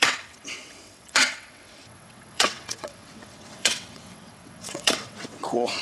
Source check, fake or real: fake